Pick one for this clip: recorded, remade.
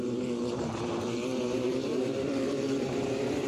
remade